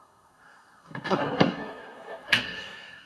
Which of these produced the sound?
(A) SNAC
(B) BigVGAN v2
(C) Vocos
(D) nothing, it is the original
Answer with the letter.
A